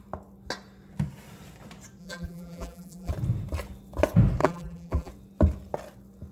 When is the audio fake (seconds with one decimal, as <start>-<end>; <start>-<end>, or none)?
2.0-3.1; 4.4-5.1